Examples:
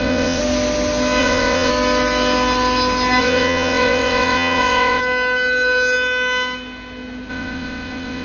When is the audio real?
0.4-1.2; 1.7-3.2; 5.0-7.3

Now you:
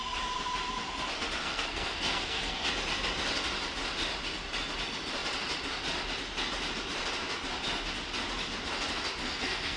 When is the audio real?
0.0-1.4; 2.7-9.2